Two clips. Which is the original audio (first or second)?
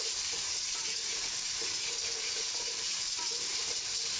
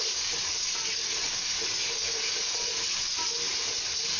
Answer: second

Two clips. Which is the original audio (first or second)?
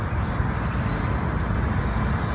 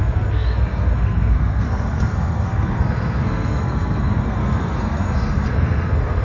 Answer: first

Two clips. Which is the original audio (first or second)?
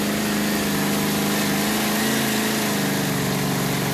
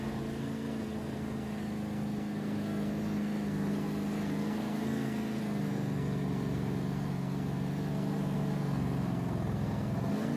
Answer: first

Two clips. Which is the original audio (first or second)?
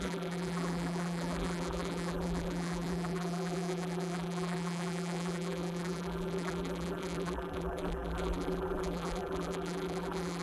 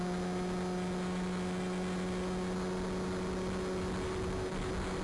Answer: second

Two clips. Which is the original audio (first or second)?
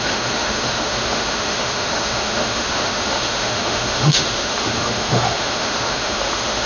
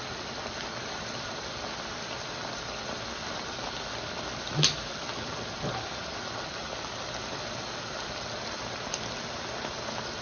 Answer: second